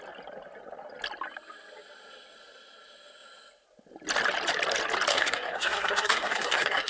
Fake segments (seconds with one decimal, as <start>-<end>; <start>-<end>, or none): 5.1-6.9